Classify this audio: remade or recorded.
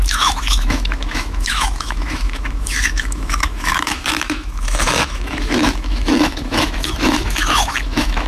remade